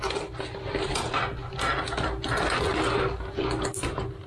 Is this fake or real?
real